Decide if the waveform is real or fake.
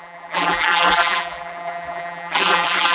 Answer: fake